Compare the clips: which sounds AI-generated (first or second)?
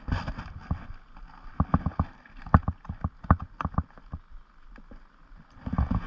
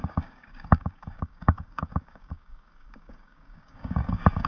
second